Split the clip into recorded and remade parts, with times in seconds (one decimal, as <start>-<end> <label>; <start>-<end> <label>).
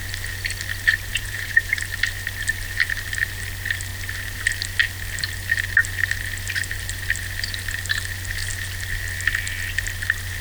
0.0-1.1 recorded; 1.1-1.8 remade; 1.8-10.4 recorded